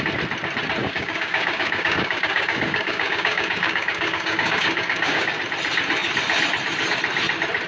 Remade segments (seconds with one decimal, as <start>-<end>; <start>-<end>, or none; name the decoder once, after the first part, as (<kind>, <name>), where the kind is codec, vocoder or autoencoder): 0.8-5.4 (codec, DAC)

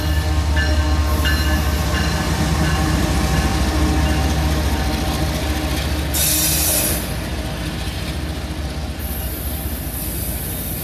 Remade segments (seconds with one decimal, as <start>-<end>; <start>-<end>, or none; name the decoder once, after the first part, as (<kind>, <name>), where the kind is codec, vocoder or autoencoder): none